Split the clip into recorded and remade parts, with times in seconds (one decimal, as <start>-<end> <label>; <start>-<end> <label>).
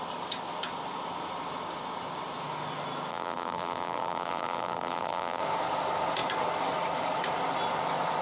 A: 0.0-3.1 recorded; 3.1-5.4 remade; 5.4-8.2 recorded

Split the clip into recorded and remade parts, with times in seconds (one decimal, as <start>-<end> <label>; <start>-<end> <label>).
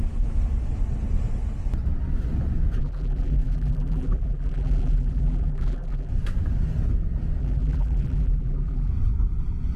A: 0.0-2.8 recorded; 2.8-6.1 remade; 6.1-7.4 recorded; 7.4-8.9 remade; 8.9-9.8 recorded